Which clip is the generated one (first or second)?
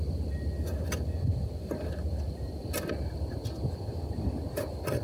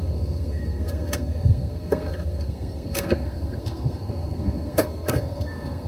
second